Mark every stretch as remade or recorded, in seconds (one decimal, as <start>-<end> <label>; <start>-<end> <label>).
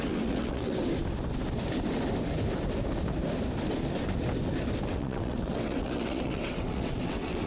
0.0-0.8 remade; 0.8-4.9 recorded; 4.9-7.5 remade